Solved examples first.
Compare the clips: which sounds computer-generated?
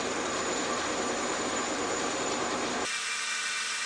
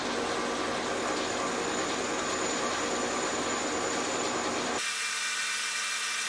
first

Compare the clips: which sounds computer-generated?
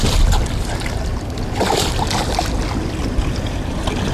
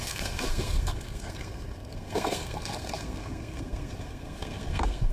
second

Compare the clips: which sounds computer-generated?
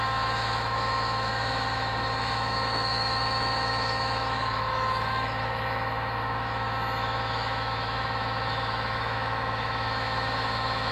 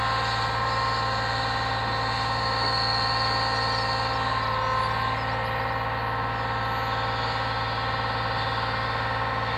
first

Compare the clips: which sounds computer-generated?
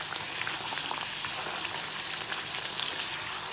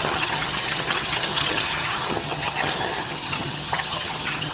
second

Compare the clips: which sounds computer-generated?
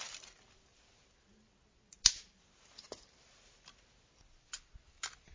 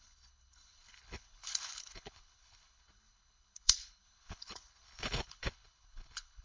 second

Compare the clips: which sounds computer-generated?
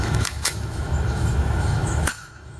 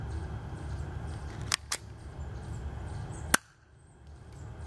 first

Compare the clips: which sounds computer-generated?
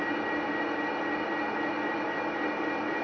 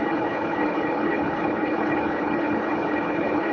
second